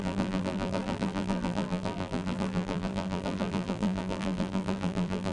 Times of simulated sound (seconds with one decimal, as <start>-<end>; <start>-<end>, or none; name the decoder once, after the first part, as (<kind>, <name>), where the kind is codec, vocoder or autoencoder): 0.0-5.3 (vocoder, BigVGAN v2)